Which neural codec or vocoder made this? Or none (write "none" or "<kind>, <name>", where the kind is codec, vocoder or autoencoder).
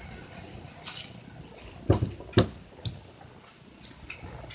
none